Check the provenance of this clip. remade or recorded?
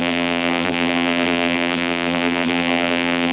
remade